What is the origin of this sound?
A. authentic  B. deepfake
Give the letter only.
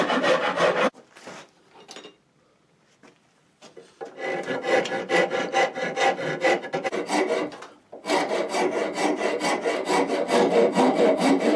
A